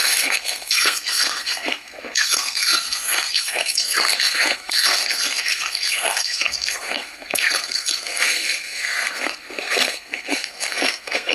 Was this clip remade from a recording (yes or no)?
yes